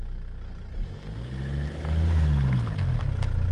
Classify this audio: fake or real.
real